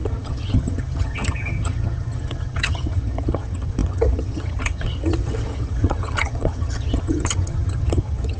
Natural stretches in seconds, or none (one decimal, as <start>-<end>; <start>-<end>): none

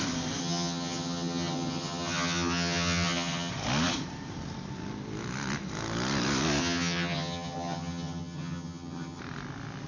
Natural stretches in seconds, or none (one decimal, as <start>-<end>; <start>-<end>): 0.0-0.4; 3.5-6.6; 9.2-9.9